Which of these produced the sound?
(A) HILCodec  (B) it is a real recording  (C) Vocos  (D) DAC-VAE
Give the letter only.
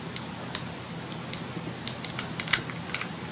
B